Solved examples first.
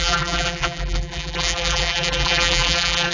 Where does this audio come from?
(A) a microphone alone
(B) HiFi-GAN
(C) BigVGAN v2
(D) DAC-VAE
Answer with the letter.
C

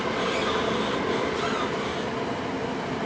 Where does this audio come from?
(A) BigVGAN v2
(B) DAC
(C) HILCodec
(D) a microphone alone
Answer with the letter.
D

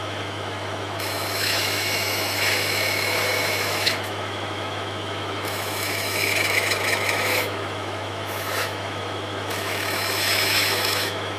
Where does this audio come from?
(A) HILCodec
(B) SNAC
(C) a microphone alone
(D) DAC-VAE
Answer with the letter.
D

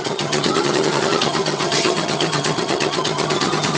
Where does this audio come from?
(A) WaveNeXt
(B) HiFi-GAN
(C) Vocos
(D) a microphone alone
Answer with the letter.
B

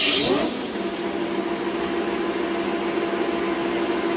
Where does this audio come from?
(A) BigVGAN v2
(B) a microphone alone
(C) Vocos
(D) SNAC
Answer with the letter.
B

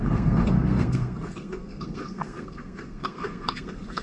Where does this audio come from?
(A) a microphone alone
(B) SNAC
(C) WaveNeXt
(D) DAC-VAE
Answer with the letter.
B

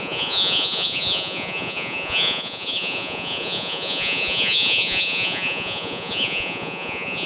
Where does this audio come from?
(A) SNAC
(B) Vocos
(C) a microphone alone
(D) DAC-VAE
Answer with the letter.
B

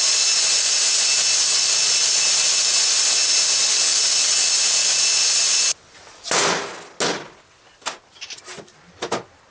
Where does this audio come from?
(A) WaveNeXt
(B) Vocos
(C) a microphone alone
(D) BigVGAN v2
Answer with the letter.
C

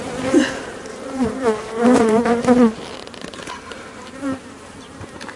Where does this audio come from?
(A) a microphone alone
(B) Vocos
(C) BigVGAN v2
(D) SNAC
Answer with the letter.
C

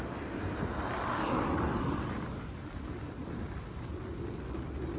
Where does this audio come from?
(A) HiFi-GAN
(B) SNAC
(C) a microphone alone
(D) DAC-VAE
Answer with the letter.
C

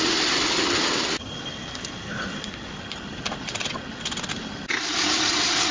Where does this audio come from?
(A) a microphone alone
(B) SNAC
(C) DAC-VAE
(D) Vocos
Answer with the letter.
A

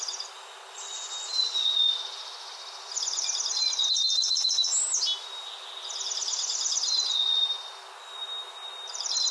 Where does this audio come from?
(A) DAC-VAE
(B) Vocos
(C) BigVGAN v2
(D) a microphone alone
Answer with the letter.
D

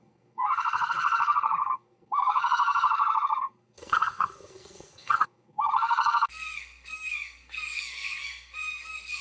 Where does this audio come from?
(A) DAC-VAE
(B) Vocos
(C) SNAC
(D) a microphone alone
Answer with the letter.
C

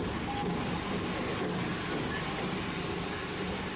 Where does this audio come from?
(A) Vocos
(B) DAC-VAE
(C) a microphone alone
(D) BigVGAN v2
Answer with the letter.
C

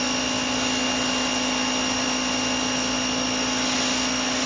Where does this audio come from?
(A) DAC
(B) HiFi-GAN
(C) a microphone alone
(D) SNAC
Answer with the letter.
C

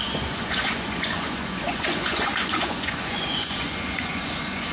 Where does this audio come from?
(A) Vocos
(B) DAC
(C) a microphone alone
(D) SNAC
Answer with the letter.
A